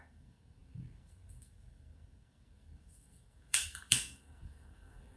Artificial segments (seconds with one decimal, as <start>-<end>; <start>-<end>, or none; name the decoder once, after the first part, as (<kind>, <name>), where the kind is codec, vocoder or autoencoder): 0.0-5.2 (codec, SNAC)